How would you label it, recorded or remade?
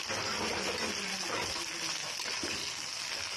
recorded